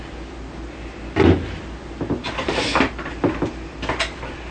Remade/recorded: recorded